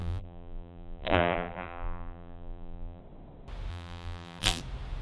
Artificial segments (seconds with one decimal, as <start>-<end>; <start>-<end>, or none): 0.0-3.0; 3.7-4.6